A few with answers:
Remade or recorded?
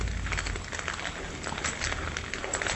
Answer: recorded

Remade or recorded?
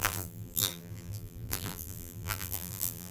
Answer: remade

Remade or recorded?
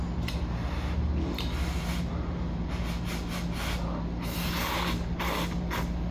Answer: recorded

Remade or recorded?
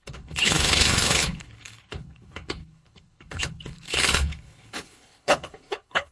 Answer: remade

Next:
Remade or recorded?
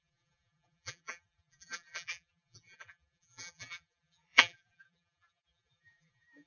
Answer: remade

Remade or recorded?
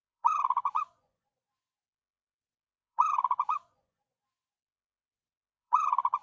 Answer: remade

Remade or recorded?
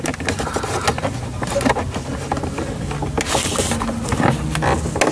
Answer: recorded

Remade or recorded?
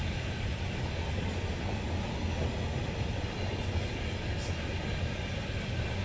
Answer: recorded